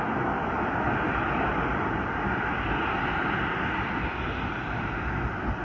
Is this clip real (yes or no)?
yes